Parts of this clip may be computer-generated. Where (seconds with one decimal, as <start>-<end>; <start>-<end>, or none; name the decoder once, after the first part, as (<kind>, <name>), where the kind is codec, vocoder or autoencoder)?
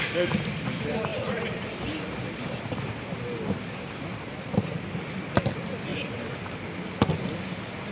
none